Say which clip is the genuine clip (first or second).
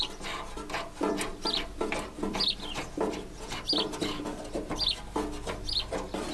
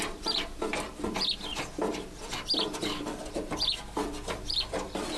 first